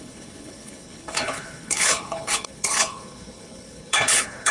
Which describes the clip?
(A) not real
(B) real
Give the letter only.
A